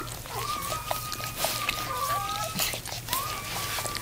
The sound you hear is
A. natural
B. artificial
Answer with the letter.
A